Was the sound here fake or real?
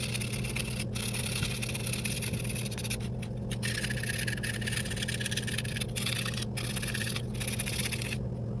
real